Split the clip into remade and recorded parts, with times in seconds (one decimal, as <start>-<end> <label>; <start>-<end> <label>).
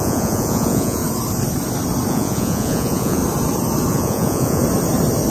0.0-1.0 remade; 1.0-2.1 recorded; 2.1-3.2 remade; 3.2-3.9 recorded; 3.9-4.6 remade; 4.6-5.3 recorded